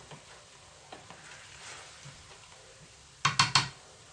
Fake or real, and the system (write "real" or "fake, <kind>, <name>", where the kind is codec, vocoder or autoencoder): real